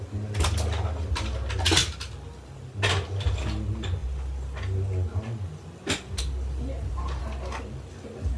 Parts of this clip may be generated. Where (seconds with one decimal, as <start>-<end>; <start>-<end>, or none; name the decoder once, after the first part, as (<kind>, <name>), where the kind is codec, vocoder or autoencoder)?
none